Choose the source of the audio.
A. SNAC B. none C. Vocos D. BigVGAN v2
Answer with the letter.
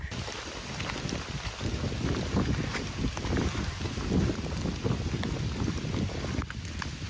B